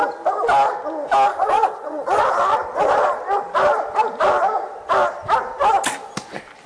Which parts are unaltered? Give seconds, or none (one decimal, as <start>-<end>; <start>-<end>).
0.0-1.3; 2.2-6.7